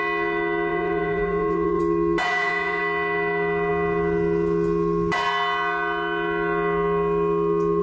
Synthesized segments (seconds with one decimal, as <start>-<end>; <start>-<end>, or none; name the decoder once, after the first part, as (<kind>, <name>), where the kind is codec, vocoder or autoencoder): 0.7-1.8 (vocoder, Vocos); 2.2-2.8